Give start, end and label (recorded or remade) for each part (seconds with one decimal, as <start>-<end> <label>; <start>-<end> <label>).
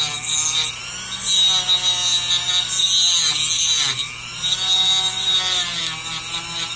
0.0-6.8 recorded